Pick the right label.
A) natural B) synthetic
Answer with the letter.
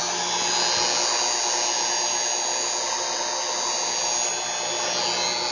A